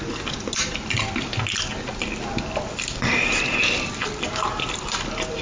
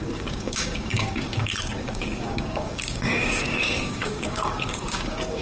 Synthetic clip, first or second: second